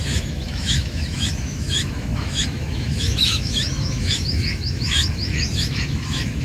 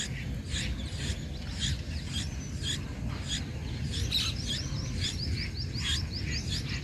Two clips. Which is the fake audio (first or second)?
first